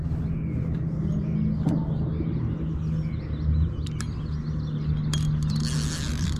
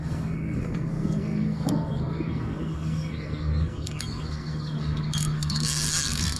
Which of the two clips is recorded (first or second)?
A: first